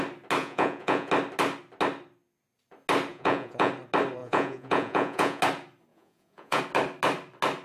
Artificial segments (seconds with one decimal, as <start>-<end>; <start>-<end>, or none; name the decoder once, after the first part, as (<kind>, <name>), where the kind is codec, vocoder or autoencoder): 0.4-1.1 (vocoder, Vocos); 3.1-3.7; 4.2-5.4; 5.9-6.6